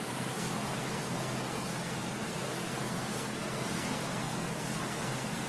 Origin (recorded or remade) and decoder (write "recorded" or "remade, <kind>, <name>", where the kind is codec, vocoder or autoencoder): remade, codec, SNAC